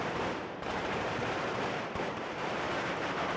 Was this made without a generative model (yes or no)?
no